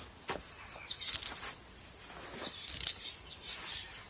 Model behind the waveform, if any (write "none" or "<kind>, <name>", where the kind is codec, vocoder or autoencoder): none